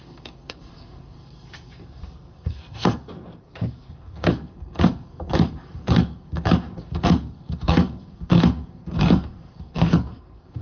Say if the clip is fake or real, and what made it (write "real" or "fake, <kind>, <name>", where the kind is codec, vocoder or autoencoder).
fake, codec, SNAC